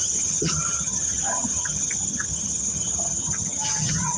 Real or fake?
fake